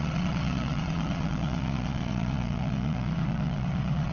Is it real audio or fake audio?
fake